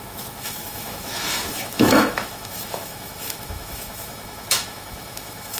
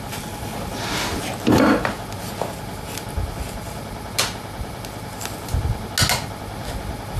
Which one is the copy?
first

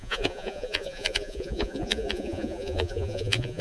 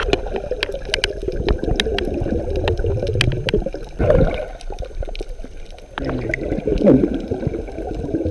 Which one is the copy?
first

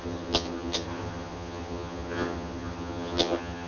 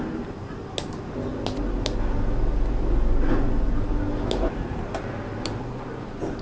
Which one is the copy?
first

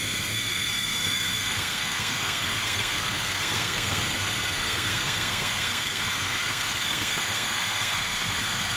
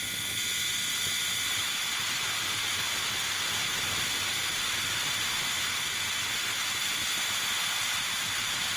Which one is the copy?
first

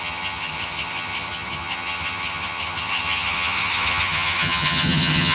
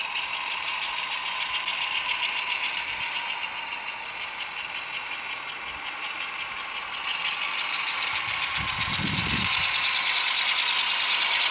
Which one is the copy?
first